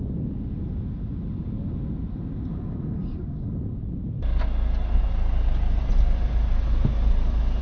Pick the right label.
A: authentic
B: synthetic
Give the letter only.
A